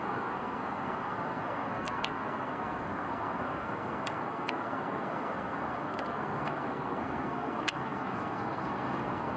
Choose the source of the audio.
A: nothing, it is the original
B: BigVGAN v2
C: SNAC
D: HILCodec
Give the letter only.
C